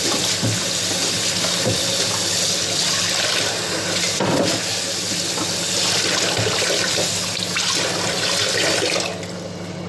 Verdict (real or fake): real